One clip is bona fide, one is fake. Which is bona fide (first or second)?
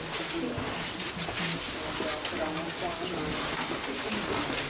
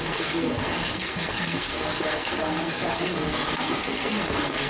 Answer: first